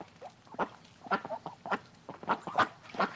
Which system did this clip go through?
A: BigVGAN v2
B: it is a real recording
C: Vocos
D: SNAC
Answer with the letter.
B